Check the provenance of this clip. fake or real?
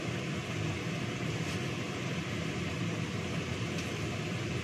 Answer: fake